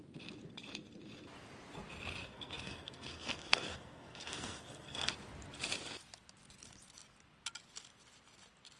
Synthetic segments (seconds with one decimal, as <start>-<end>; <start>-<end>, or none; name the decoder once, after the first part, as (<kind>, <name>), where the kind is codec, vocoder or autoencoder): 2.2-5.1 (codec, SNAC)